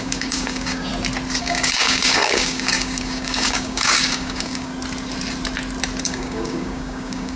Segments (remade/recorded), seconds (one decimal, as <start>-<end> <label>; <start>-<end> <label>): 0.0-0.9 remade; 0.9-1.4 recorded; 1.4-4.7 remade; 4.7-6.0 recorded; 6.0-7.4 remade